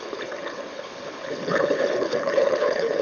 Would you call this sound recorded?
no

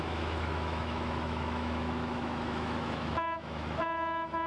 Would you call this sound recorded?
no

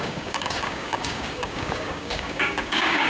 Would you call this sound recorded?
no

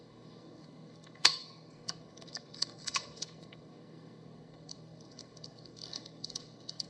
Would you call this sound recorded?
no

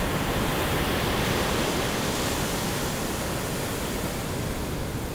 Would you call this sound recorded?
yes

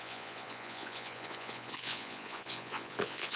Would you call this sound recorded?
no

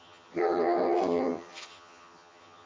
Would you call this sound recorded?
no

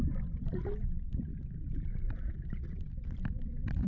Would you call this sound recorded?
yes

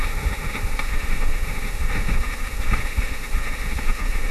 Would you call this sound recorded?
no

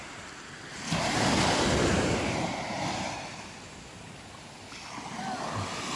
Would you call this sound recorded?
yes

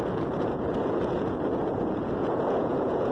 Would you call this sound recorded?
no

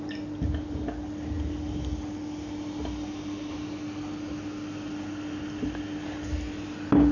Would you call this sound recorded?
yes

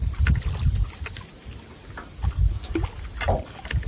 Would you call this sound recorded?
yes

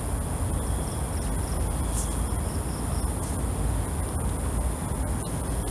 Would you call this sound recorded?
yes